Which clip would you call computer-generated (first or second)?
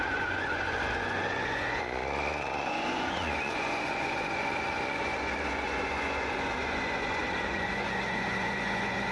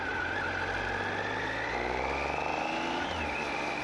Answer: first